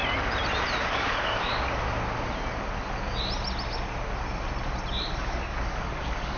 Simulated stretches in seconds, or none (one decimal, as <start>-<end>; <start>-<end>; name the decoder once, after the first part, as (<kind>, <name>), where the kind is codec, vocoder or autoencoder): 0.8-1.5 (codec, DAC); 5.2-6.4